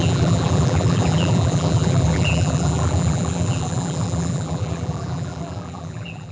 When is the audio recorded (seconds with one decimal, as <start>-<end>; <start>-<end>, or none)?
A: none